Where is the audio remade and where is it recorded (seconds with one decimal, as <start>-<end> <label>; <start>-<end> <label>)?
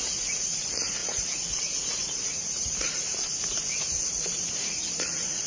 0.0-3.1 remade; 3.1-4.1 recorded; 4.1-5.5 remade